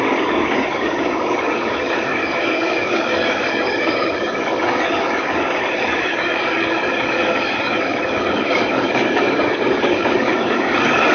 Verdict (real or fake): fake